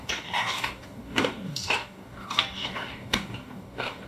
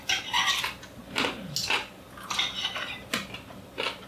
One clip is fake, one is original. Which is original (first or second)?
second